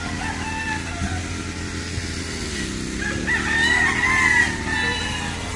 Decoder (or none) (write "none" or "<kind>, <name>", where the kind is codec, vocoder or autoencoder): none